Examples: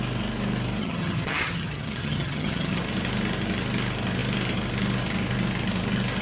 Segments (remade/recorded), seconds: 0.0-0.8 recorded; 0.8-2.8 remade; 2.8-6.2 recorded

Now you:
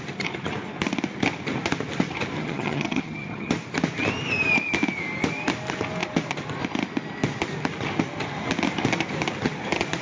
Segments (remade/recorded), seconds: 0.0-2.4 recorded; 2.4-3.5 remade; 3.5-10.0 recorded

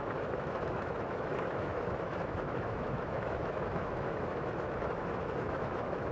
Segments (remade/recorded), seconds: 0.0-6.1 remade